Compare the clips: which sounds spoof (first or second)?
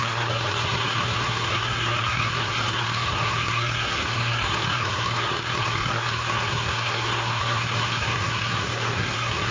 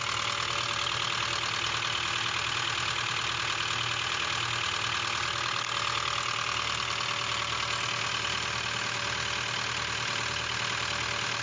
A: first